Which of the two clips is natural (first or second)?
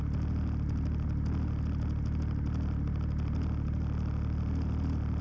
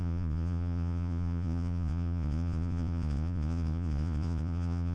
first